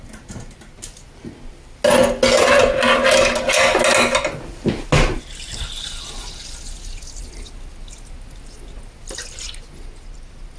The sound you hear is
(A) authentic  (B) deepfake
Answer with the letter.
A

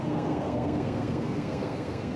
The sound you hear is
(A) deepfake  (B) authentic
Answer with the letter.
A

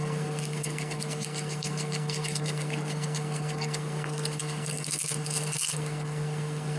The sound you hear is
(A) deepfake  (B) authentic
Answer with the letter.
A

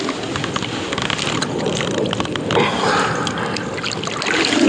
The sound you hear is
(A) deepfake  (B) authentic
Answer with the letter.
B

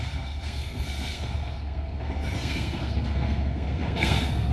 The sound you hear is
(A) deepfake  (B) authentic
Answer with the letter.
A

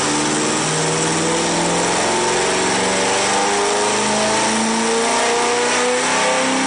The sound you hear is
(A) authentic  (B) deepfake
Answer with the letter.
A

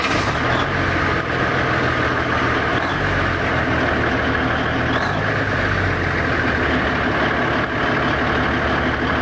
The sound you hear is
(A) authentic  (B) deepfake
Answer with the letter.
A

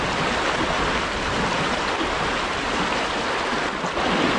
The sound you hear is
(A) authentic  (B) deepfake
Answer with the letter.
A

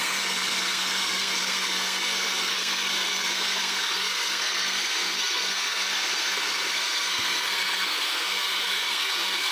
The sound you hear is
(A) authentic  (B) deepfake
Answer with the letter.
B